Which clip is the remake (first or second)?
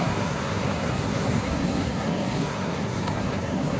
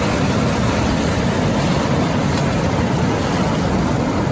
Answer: first